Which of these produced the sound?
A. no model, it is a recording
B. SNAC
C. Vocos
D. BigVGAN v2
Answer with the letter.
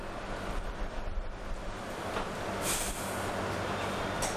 A